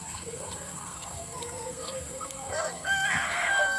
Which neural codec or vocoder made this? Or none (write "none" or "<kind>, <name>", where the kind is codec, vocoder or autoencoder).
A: codec, SNAC